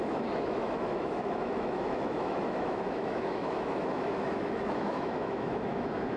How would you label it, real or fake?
fake